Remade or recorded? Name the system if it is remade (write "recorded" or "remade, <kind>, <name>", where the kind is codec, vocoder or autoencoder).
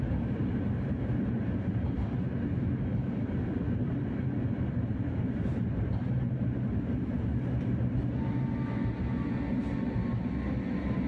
recorded